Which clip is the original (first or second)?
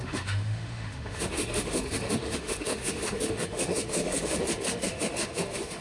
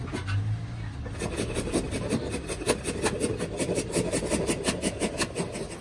second